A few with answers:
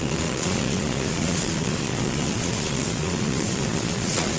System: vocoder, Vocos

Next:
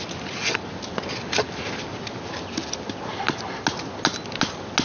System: none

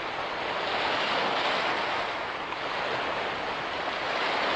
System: none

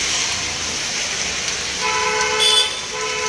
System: none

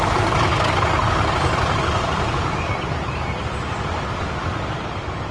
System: none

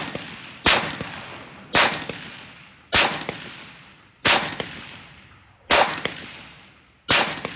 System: none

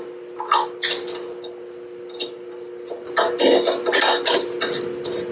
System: none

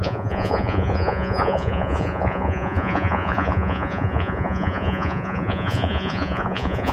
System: vocoder, Vocos